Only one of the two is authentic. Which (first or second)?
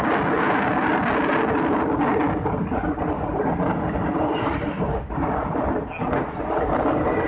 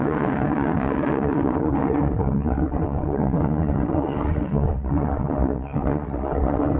first